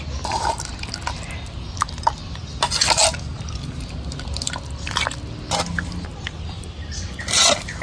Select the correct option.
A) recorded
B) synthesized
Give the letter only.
A